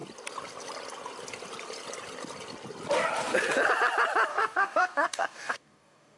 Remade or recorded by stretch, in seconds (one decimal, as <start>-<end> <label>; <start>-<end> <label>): 0.0-4.3 recorded; 4.3-6.2 remade